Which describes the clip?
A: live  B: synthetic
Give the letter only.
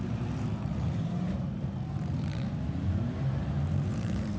B